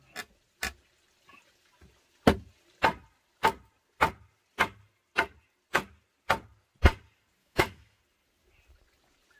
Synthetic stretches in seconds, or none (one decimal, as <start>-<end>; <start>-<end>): 7.4-8.0